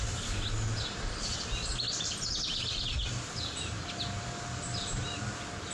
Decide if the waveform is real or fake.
real